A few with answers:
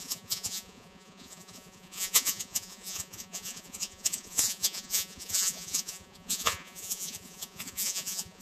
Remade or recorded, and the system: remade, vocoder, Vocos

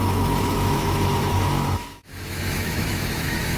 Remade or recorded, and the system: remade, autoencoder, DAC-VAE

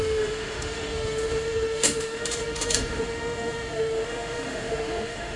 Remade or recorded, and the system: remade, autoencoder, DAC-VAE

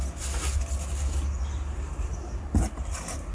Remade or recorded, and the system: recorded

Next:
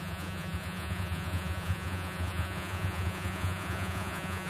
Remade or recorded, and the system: remade, vocoder, Vocos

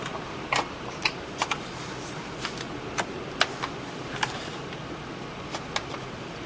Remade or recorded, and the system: recorded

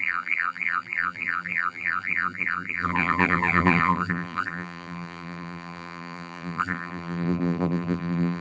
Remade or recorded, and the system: remade, vocoder, BigVGAN v2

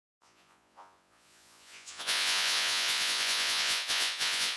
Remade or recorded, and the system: remade, vocoder, Vocos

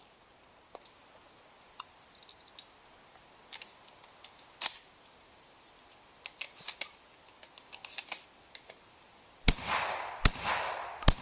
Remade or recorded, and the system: recorded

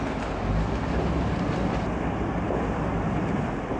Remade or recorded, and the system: recorded